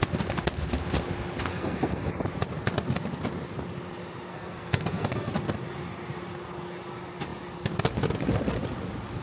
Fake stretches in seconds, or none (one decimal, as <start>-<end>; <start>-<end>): 1.5-2.1; 4.3-5.3

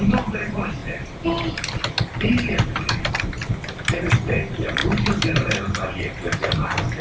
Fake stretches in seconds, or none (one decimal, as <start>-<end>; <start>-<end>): none

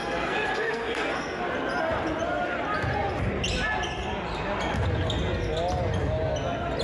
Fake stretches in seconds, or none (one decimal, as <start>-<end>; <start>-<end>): 0.0-1.4

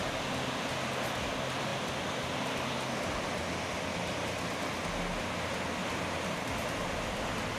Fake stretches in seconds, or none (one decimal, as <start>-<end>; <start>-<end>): none

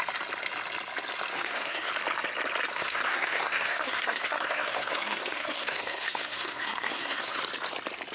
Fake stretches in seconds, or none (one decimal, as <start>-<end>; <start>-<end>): 1.3-1.9; 2.7-7.4

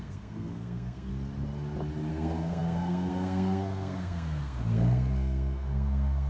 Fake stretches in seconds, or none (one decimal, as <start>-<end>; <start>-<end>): 0.0-1.1; 2.1-6.3

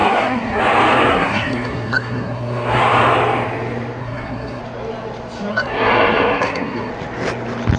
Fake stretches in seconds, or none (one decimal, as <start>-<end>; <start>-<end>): 0.0-0.6; 1.1-2.8; 4.0-4.6; 5.5-6.9